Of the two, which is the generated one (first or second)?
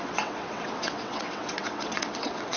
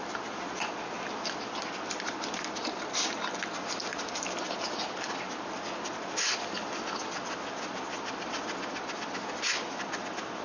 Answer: first